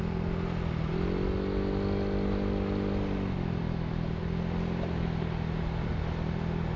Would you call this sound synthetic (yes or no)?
no